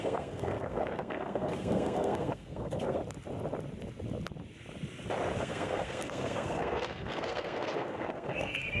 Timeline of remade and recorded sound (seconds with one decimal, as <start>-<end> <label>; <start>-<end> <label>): 0.0-3.0 remade; 3.0-5.4 recorded; 5.4-8.8 remade